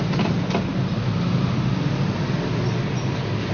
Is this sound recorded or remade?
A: recorded